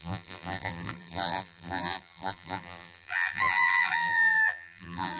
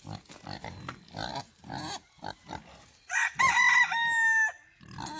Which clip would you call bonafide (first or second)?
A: second